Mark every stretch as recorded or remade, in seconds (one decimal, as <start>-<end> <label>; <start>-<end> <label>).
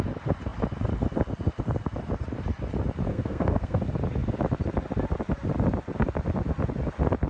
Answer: 0.0-3.1 recorded; 3.1-3.8 remade; 3.8-7.3 recorded